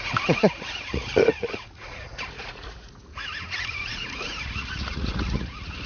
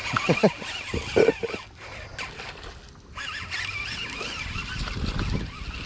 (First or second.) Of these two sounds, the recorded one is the second